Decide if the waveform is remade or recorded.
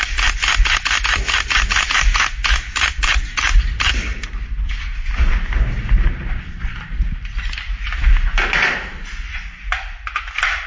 recorded